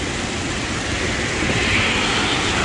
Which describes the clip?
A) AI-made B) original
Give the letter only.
B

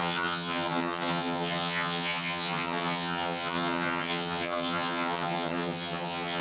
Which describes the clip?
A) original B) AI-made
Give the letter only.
B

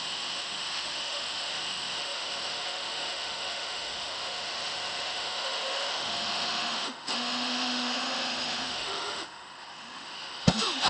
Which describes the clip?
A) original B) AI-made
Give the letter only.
B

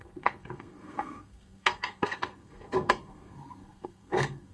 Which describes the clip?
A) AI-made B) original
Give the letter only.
A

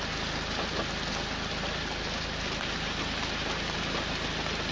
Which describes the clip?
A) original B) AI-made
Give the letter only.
A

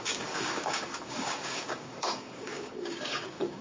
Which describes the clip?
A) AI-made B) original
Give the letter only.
A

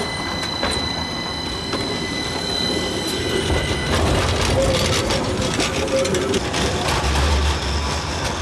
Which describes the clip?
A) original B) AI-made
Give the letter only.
A